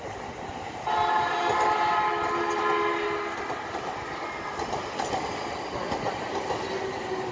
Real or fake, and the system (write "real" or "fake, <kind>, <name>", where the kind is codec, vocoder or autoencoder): real